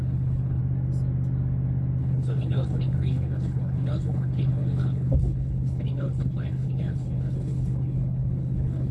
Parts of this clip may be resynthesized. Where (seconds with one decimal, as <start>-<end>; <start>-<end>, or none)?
0.0-0.6; 2.0-8.9